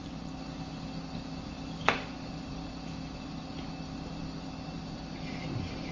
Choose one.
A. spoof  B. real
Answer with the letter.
B